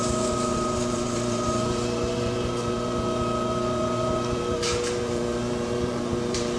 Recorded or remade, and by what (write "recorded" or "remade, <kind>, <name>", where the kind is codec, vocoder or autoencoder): remade, vocoder, BigVGAN v2